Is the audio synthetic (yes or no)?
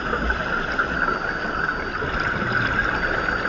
no